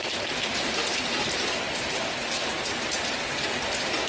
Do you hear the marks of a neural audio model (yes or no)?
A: yes